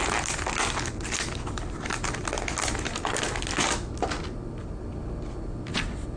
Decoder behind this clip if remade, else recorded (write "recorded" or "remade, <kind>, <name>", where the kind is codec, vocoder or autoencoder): recorded